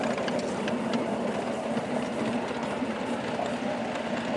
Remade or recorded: recorded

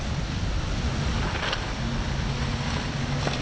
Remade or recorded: recorded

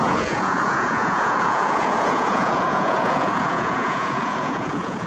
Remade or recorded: remade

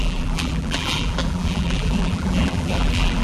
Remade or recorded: remade